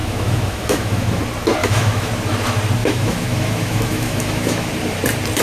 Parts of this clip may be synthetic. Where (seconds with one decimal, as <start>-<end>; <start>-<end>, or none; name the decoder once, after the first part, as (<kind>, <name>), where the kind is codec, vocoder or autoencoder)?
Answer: 0.0-1.2 (autoencoder, DAC-VAE); 1.6-2.1; 2.8-4.7